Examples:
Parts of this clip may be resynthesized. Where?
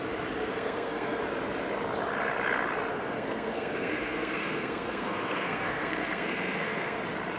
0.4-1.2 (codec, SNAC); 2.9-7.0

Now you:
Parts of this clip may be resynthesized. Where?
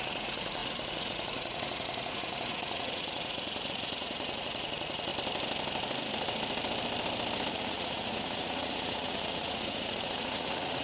0.0-5.1 (vocoder, Vocos); 7.5-10.8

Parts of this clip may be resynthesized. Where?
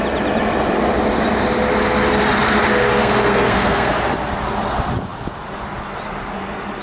3.0-3.9 (codec, SNAC)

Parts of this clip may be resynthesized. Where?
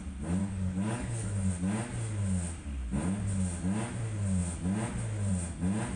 0.4-1.5 (codec, DAC)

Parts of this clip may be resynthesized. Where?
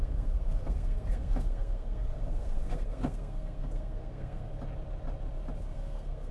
0.0-4.5 (codec, SNAC); 5.6-6.3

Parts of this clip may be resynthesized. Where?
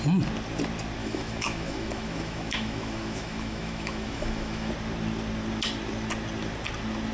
1.0-4.7 (autoencoder, DAC-VAE)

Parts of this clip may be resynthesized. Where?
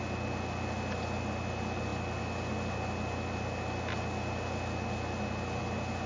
none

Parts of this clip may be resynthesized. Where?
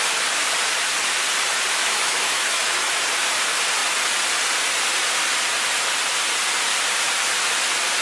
1.8-2.9 (autoencoder, DAC-VAE)